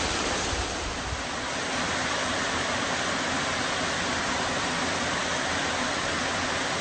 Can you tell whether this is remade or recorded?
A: recorded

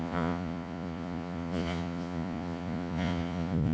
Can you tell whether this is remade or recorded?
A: remade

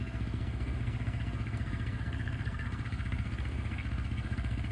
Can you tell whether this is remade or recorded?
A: remade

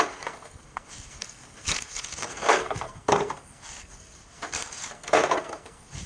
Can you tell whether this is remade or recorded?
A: remade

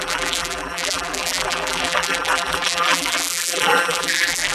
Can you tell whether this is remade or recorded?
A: remade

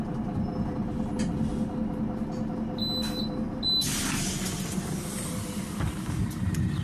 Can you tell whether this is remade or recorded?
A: recorded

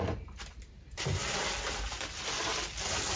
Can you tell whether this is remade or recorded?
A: remade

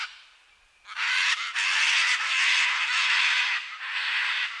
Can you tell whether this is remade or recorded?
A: recorded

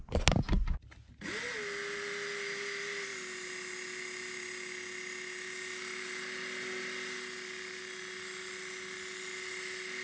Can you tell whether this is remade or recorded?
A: recorded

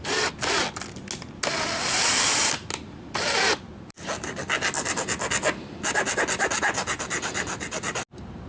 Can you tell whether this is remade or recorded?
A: recorded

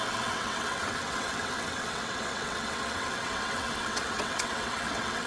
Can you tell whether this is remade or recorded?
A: remade